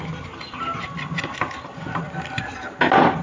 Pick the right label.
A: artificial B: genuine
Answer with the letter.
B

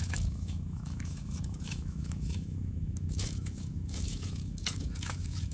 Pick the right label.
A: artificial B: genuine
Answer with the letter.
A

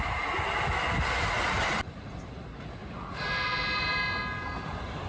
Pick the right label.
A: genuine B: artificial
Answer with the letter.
A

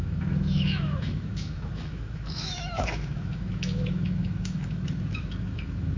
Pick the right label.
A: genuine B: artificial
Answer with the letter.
B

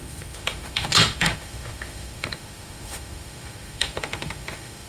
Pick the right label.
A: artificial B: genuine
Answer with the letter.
A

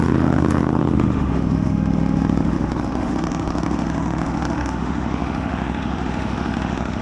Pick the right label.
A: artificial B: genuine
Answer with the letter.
A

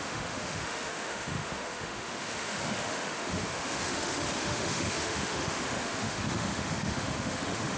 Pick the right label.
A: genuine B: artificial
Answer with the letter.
B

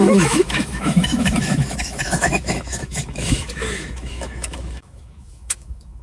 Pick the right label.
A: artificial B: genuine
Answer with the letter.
A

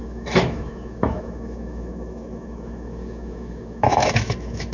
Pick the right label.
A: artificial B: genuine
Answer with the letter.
A